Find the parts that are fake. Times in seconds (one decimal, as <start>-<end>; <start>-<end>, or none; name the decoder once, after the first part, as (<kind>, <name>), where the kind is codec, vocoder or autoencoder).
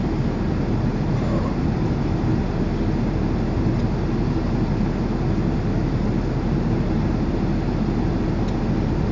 none